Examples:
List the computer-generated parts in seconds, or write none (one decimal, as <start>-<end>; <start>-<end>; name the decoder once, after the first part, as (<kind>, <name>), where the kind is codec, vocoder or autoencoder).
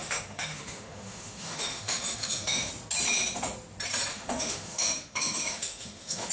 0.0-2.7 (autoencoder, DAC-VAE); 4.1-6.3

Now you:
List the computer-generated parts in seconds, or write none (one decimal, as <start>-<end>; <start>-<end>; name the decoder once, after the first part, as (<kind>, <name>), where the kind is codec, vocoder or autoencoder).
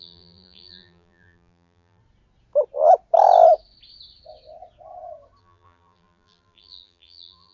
0.0-2.0 (vocoder, BigVGAN v2); 5.4-7.5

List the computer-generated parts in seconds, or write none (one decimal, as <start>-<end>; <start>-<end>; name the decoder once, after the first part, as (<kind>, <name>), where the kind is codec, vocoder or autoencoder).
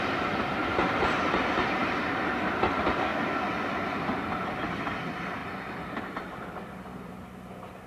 0.0-3.1 (vocoder, BigVGAN v2); 3.6-5.4; 6.0-7.9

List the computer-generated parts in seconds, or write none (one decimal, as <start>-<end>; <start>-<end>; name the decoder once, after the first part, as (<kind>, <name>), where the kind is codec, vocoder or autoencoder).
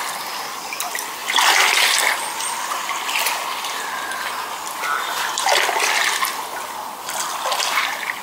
none